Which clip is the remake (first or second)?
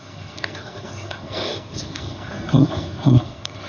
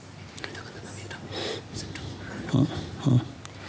first